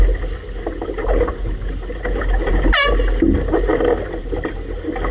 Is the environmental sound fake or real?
real